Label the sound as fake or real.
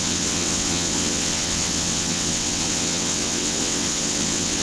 fake